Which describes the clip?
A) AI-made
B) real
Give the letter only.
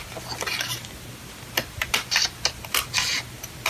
B